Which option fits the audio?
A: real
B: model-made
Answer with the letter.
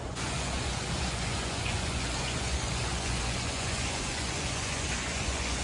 B